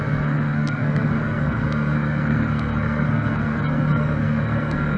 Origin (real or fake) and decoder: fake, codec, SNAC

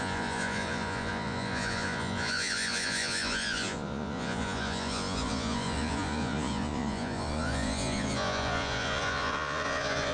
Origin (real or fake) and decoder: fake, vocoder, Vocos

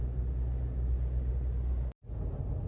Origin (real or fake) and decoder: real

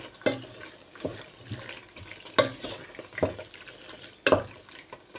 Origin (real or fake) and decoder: real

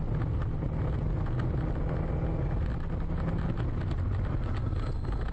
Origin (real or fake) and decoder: real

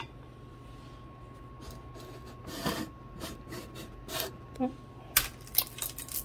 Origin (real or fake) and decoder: real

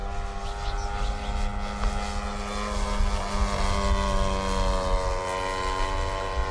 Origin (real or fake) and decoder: real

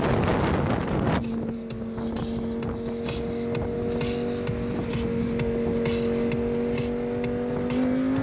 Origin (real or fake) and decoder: real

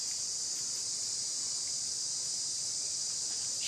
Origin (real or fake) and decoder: real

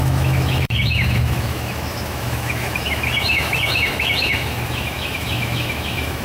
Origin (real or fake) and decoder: fake, autoencoder, DAC-VAE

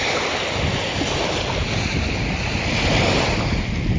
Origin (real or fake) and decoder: real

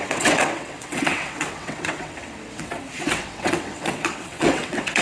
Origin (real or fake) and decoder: fake, vocoder, WaveNeXt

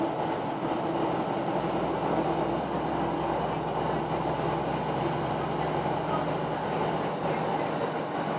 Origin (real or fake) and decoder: real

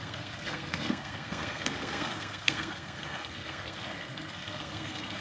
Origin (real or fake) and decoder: fake, codec, SNAC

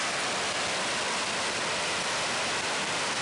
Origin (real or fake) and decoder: real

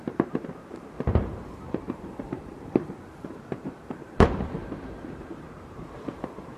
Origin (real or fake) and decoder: fake, vocoder, BigVGAN v2